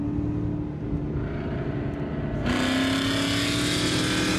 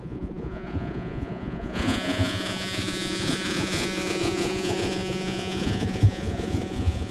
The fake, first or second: second